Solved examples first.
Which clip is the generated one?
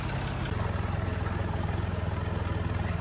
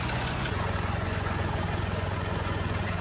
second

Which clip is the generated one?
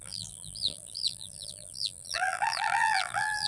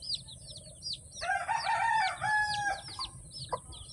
first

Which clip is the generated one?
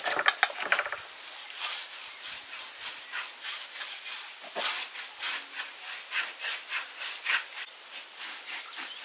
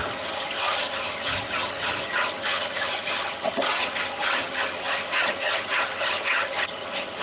second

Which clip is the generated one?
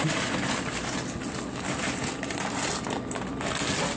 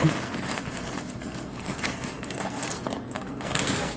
second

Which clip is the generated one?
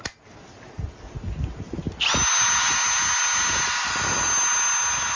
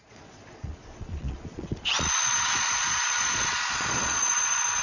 second